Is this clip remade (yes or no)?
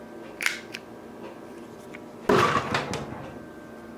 no